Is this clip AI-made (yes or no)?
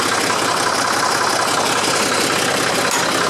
no